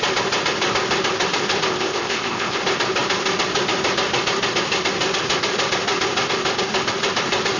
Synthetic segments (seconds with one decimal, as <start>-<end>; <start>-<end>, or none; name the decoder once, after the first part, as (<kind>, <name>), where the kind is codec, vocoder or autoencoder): 1.7-2.6 (codec, ZipCodec)